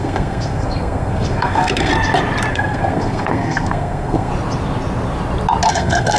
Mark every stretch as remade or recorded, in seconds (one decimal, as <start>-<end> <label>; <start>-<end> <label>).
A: 0.0-1.9 remade; 1.9-2.5 recorded; 2.5-4.3 remade; 4.3-5.7 recorded; 5.7-6.2 remade